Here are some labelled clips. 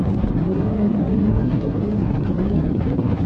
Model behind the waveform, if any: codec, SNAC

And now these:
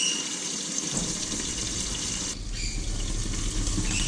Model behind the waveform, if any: none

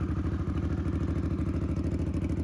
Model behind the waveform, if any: none